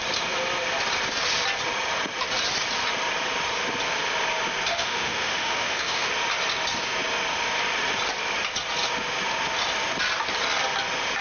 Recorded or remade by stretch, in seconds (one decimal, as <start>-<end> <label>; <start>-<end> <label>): 0.0-4.7 recorded; 4.7-6.1 remade; 6.1-11.2 recorded